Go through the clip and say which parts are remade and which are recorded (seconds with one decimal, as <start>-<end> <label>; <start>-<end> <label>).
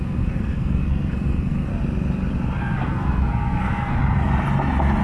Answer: 0.0-1.7 remade; 1.7-2.6 recorded; 2.6-4.0 remade; 4.0-5.0 recorded